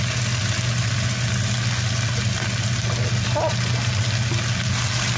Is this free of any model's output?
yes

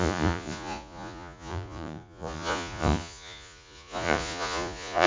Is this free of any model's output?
no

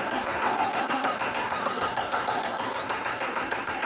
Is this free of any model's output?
no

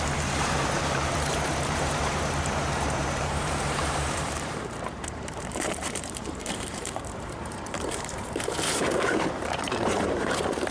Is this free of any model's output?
no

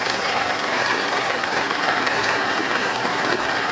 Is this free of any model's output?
no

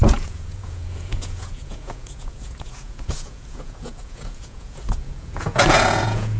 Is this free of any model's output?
no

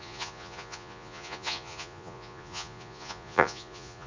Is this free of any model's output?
no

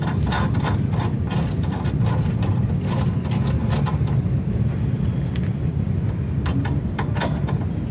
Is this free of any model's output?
no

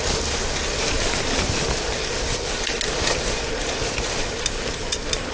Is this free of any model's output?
yes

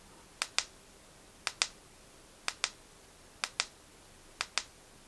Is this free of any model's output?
yes